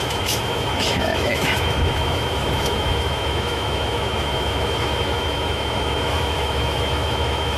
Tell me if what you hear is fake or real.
fake